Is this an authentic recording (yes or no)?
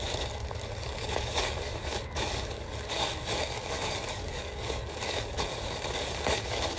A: no